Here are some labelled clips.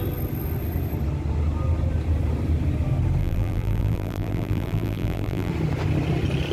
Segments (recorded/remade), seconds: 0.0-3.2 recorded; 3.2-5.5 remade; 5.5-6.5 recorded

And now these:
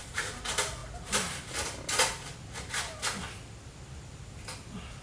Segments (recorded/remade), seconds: 0.0-5.0 recorded

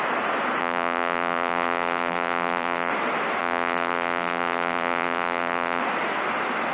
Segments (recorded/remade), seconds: 0.0-0.6 recorded; 0.6-2.9 remade; 2.9-3.4 recorded; 3.4-5.8 remade; 5.8-6.7 recorded

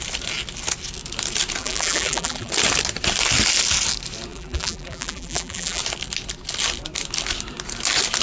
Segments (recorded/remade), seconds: 0.0-1.6 recorded; 1.6-2.5 remade; 2.5-4.3 recorded; 4.3-5.8 remade; 5.8-8.2 recorded

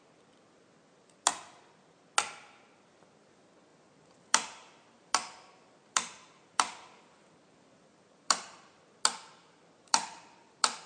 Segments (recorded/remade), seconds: 0.0-3.7 recorded; 3.7-8.8 remade; 8.8-9.4 recorded; 9.4-10.9 remade

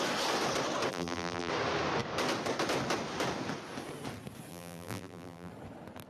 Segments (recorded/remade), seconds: 0.0-0.9 recorded; 0.9-1.5 remade; 1.5-4.5 recorded; 4.5-5.5 remade; 5.5-6.1 recorded

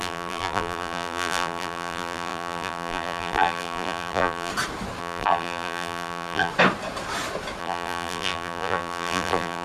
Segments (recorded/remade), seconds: 0.0-4.5 remade; 4.5-5.0 recorded; 5.0-6.5 remade; 6.5-7.6 recorded; 7.6-9.6 remade